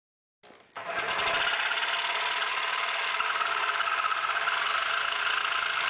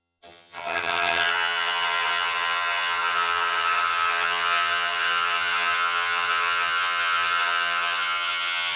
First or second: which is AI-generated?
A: second